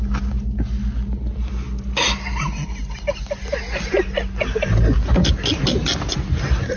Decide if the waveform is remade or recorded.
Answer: recorded